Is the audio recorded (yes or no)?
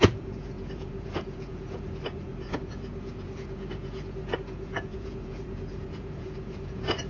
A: no